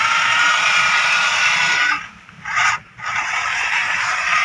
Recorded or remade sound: remade